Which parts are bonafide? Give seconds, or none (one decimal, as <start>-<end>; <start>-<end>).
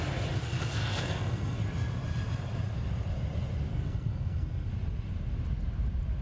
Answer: 0.0-0.4; 1.6-3.7; 4.7-6.2